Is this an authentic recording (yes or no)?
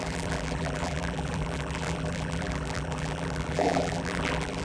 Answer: no